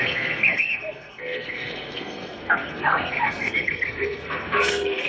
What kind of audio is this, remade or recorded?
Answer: remade